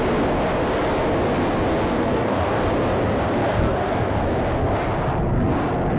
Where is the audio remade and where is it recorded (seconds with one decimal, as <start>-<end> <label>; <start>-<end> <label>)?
0.0-1.9 recorded; 1.9-2.6 remade; 2.6-3.4 recorded; 3.4-4.2 remade; 4.2-6.0 recorded